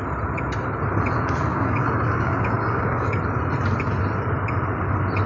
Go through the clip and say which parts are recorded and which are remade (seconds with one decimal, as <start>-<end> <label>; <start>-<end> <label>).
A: 0.0-1.5 recorded; 1.5-3.2 remade; 3.2-5.3 recorded